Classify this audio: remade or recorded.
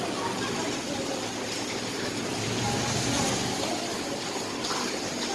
recorded